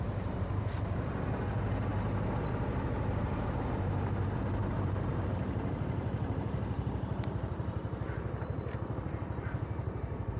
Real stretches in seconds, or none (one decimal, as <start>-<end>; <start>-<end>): 1.9-3.2